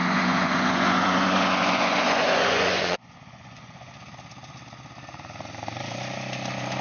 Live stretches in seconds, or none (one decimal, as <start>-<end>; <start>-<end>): 3.9-6.8